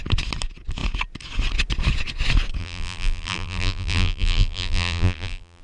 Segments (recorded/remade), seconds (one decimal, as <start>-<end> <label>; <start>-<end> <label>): 0.0-2.6 recorded; 2.6-5.6 remade